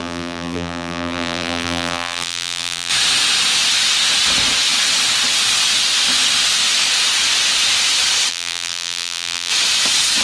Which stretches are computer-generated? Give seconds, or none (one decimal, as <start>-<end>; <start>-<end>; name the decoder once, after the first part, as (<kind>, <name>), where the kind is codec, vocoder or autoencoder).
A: 0.0-2.9 (vocoder, BigVGAN v2); 8.3-9.5